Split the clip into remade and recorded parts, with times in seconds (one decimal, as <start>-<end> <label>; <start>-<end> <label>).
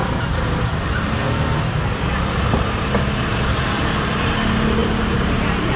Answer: 0.0-0.6 remade; 0.6-3.3 recorded; 3.3-4.3 remade; 4.3-4.8 recorded; 4.8-5.8 remade